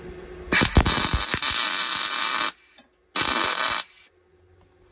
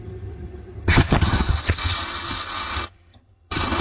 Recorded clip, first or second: first